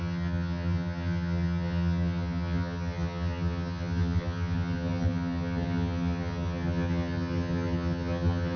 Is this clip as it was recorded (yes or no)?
no